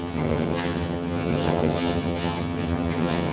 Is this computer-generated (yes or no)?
yes